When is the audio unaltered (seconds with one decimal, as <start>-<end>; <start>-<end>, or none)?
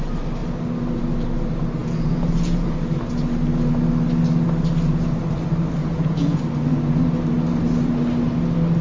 0.0-1.8; 2.7-5.8; 6.4-8.8